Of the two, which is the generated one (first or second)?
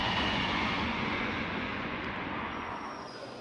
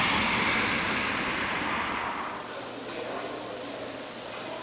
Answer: first